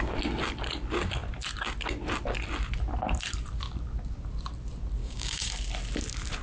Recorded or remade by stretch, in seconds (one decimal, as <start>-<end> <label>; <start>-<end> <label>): 0.0-5.0 recorded; 5.0-5.5 remade; 5.5-6.4 recorded